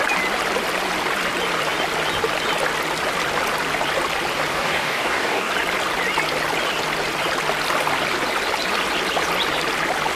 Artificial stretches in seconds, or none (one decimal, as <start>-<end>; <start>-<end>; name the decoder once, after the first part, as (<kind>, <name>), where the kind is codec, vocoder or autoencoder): 4.5-5.5 (codec, DAC)